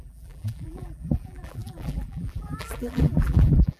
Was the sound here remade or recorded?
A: remade